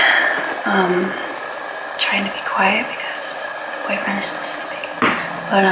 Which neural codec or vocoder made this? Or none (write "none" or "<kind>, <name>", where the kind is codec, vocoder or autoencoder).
none